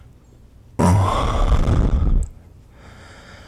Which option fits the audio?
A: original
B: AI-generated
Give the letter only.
A